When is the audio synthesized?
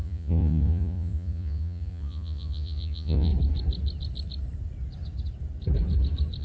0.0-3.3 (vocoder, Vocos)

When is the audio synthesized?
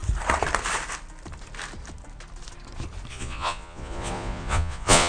3.1-5.1 (vocoder, Vocos)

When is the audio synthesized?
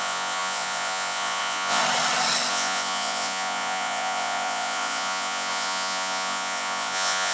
0.0-1.8 (vocoder, Vocos); 2.5-7.3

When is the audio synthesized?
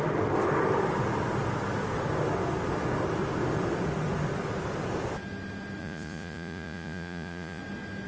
5.8-7.6 (vocoder, Vocos)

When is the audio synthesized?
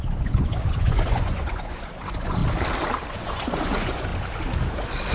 0.0-2.4 (vocoder, Vocos); 3.1-4.1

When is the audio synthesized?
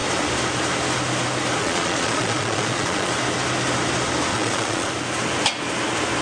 1.6-3.1 (vocoder, Vocos); 4.3-4.9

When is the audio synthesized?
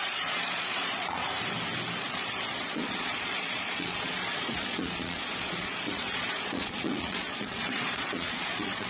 0.0-1.2 (vocoder, Vocos); 2.0-8.9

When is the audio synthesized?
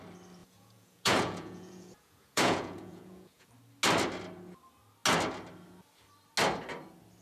0.4-3.5 (vocoder, Vocos)